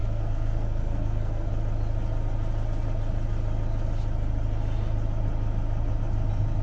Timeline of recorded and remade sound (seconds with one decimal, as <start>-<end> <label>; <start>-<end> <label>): 0.0-1.5 remade; 1.5-6.6 recorded